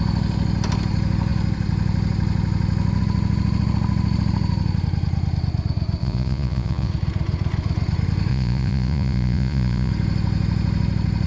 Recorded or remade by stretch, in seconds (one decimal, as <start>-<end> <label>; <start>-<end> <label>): 0.0-6.0 recorded; 6.0-6.9 remade; 6.9-8.3 recorded; 8.3-9.9 remade; 9.9-11.3 recorded